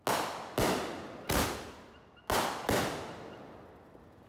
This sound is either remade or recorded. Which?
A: recorded